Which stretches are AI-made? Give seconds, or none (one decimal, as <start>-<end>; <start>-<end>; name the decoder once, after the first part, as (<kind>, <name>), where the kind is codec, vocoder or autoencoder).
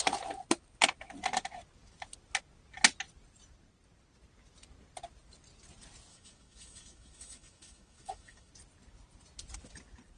6.1-8.5 (autoencoder, DAC-VAE)